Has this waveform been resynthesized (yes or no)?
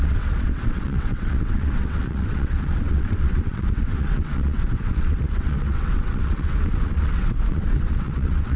yes